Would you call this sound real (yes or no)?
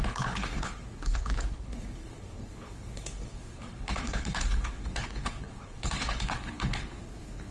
no